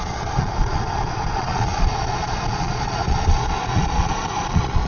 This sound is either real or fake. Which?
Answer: fake